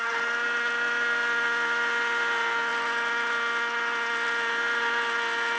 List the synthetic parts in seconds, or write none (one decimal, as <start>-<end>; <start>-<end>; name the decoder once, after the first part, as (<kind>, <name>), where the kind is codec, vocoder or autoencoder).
none